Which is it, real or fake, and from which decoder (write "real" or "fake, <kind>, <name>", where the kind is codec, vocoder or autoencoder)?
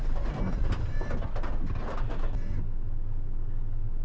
real